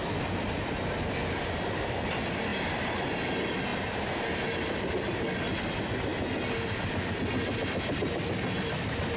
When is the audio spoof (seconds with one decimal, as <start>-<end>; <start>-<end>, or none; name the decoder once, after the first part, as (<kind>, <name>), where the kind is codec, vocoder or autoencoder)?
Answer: none